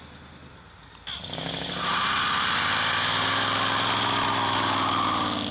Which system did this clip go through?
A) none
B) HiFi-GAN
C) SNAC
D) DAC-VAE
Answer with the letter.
A